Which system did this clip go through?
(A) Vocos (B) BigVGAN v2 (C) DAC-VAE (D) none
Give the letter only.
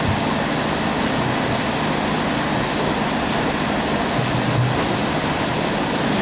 D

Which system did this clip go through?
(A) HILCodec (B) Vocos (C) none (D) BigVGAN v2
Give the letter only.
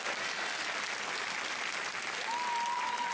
C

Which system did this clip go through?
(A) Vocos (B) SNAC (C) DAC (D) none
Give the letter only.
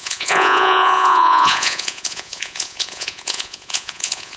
A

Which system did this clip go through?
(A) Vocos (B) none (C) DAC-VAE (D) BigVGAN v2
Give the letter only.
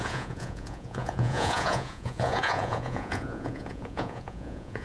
A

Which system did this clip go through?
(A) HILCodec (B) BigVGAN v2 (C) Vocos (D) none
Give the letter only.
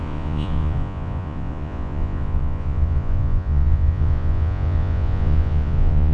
C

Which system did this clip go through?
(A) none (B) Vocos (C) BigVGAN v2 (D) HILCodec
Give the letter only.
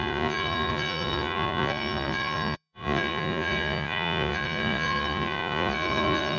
B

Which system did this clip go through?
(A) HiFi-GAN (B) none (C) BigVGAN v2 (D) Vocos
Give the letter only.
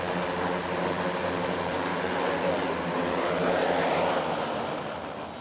B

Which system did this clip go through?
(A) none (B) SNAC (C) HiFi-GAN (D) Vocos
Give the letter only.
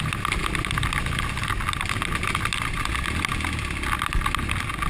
A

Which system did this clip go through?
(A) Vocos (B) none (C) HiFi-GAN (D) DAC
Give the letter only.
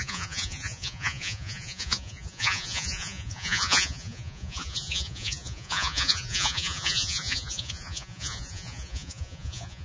A